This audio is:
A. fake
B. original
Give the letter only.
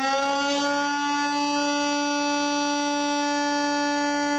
B